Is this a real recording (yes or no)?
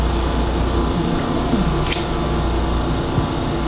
yes